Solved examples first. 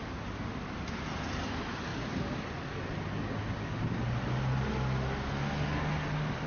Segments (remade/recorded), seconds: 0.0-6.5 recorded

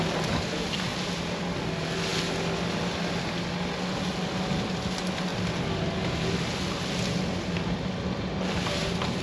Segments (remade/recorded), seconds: 0.0-9.2 recorded

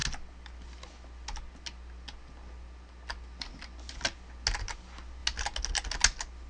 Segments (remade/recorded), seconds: 0.0-6.5 recorded

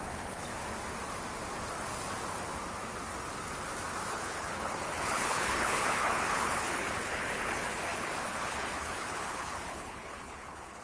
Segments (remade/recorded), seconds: 0.0-0.5 remade; 0.5-4.1 recorded; 4.1-10.8 remade